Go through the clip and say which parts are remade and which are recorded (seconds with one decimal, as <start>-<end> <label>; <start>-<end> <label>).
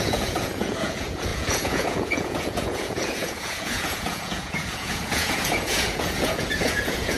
0.0-7.2 remade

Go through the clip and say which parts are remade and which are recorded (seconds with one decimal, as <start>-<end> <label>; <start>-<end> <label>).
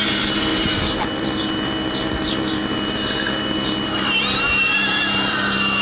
0.0-5.8 remade